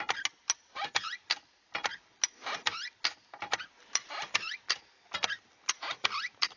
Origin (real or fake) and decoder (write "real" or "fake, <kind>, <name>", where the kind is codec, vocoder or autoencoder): real